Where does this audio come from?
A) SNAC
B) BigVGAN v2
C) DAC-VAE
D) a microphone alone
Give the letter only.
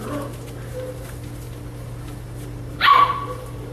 D